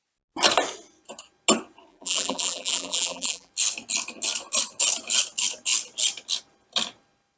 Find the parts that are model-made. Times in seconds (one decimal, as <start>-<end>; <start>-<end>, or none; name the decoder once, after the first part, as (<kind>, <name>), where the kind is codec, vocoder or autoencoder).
1.9-3.5 (vocoder, BigVGAN v2)